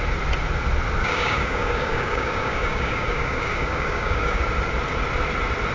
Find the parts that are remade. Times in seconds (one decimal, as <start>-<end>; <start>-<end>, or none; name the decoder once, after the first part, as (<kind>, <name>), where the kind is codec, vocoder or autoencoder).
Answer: 1.0-4.4 (codec, DAC)